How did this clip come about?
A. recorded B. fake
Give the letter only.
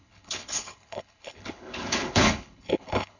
B